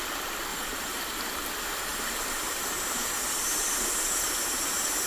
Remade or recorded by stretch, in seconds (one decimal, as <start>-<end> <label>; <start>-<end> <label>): 0.0-0.5 recorded; 0.5-1.0 remade; 1.0-1.9 recorded; 1.9-5.1 remade